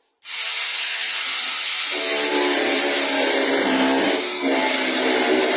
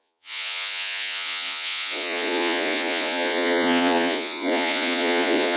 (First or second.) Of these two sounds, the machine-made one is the second